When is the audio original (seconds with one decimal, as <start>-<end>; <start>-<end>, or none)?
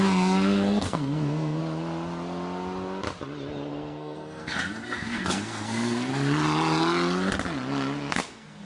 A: 1.6-3.7; 6.1-8.1